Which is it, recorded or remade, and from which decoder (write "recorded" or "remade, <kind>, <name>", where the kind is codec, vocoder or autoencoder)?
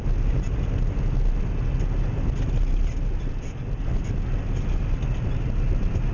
recorded